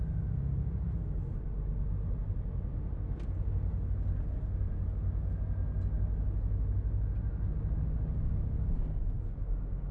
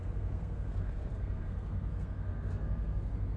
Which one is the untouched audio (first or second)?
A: first